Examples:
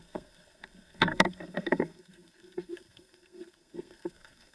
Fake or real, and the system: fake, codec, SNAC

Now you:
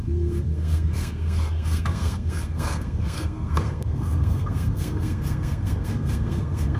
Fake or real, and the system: fake, codec, SNAC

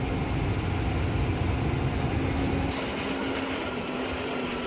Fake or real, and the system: real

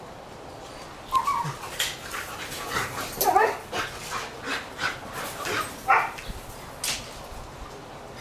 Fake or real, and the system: real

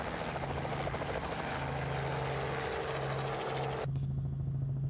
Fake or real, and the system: real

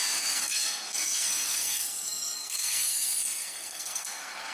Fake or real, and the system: fake, codec, SNAC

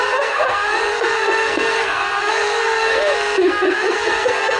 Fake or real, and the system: fake, codec, SNAC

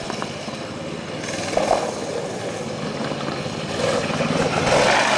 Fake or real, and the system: real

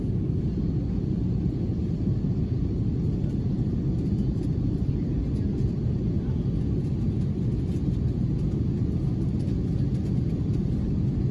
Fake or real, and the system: real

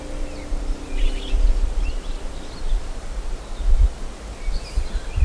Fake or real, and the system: real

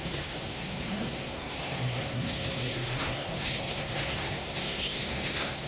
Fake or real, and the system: fake, codec, SNAC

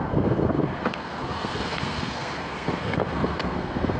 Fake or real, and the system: fake, codec, SNAC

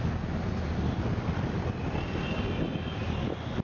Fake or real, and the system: real